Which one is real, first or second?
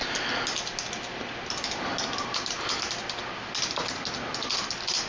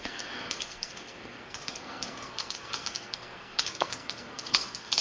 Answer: first